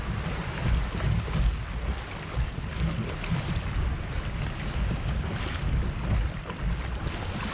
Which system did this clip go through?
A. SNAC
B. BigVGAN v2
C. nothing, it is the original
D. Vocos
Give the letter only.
C